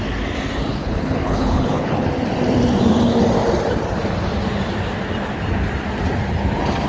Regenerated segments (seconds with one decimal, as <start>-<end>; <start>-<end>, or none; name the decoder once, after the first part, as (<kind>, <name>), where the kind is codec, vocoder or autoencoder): 0.7-2.1 (codec, HILCodec)